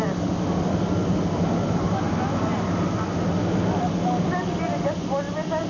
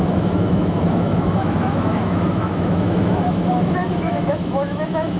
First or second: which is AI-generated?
second